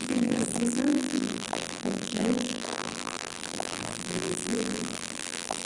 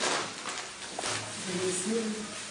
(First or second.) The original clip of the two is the second